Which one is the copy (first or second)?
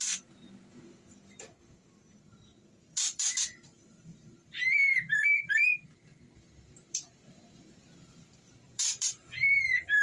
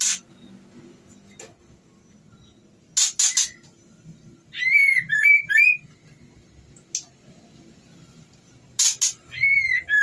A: first